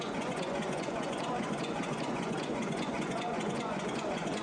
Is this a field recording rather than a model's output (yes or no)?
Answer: no